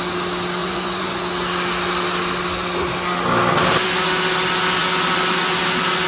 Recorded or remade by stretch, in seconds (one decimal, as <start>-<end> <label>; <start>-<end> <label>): 0.0-0.6 recorded; 0.6-1.2 remade; 1.2-6.1 recorded